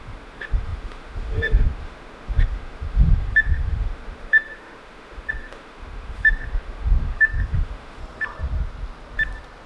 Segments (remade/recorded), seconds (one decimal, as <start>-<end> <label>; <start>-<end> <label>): 0.0-8.0 remade; 8.0-9.7 recorded